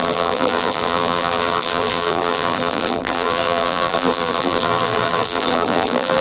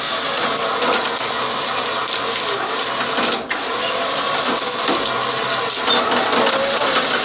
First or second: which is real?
second